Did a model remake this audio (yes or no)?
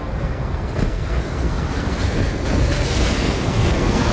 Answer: yes